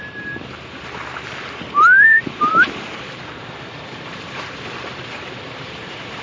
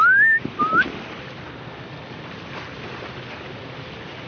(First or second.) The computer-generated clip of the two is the first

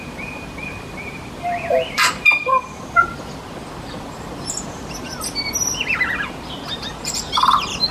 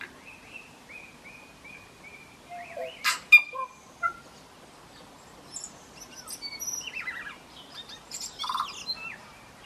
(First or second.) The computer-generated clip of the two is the first